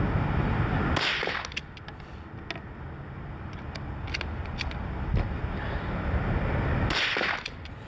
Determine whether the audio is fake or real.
real